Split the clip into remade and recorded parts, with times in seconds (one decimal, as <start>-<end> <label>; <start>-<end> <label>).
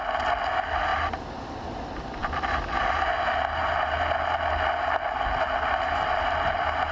0.0-6.9 recorded